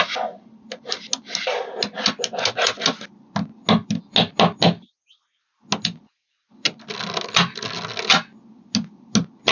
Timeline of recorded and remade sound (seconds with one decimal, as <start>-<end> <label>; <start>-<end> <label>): 0.0-9.5 recorded